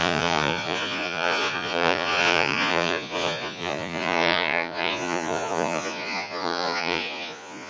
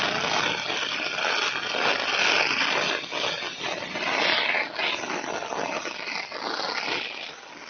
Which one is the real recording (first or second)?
second